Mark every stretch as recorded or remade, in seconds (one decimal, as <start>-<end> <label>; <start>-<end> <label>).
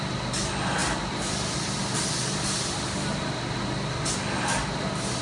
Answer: 0.0-5.2 recorded